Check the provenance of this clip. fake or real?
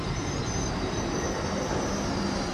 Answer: real